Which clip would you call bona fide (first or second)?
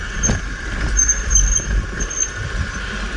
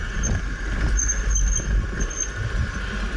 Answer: second